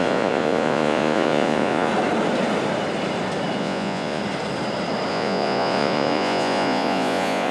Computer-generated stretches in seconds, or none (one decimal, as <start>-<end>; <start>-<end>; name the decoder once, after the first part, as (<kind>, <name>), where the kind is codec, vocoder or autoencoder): 0.0-1.9 (vocoder, Vocos); 3.6-4.2; 5.1-7.5